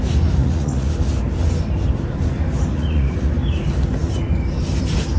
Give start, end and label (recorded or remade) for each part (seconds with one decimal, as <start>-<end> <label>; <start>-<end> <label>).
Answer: 0.0-0.4 recorded; 0.4-0.9 remade; 0.9-2.7 recorded; 2.7-3.3 remade; 3.3-5.2 recorded